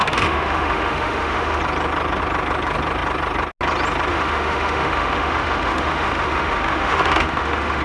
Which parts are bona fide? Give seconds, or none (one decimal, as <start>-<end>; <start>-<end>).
1.6-4.1